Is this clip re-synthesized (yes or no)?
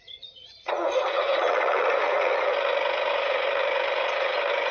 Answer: yes